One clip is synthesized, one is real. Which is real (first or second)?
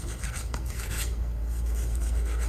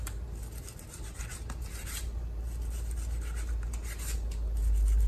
second